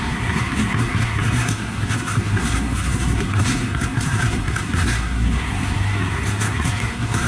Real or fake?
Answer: fake